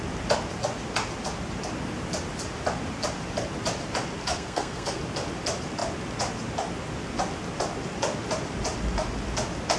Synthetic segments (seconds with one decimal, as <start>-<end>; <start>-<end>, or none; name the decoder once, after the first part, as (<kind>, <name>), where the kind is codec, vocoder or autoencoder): 4.3-5.0 (codec, SNAC)